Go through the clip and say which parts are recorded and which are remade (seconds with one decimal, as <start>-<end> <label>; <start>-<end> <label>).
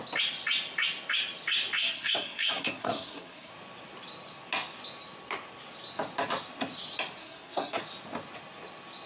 0.0-1.8 recorded; 1.8-3.5 remade; 3.5-7.2 recorded; 7.2-7.8 remade; 7.8-9.1 recorded